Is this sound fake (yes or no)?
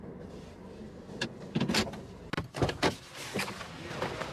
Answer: no